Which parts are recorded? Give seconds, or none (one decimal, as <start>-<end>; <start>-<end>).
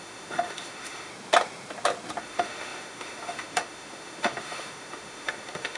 1.1-2.2